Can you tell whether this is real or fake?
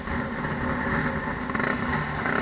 real